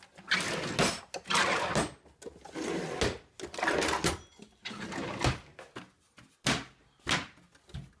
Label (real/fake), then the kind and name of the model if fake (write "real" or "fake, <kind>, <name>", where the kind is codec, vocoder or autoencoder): real